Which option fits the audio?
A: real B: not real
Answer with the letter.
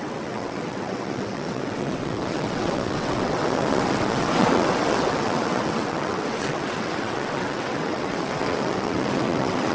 B